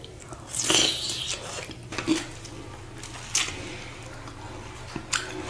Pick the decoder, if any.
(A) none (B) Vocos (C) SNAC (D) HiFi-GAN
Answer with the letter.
A